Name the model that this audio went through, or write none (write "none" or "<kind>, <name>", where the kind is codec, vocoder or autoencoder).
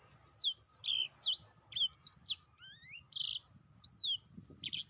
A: none